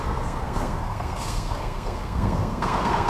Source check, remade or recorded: remade